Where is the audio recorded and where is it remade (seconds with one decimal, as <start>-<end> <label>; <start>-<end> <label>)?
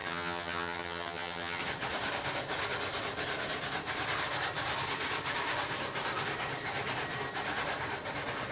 0.0-1.6 remade; 1.6-8.5 recorded